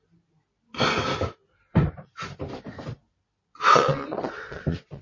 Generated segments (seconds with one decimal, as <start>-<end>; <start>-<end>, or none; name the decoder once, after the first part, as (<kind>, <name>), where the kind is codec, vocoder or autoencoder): 3.5-5.0 (vocoder, WaveNeXt)